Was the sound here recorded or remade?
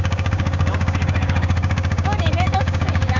remade